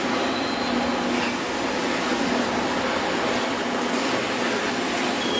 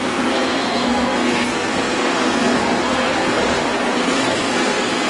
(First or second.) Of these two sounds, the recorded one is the first